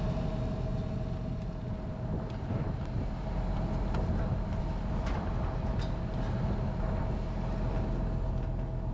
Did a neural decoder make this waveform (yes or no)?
no